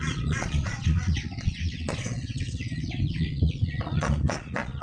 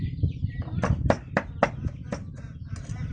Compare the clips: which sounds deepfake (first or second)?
first